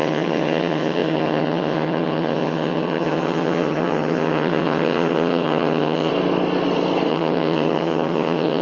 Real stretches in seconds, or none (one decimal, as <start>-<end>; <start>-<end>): 6.1-7.1